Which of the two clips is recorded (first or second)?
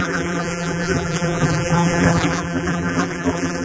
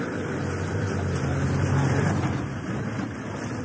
second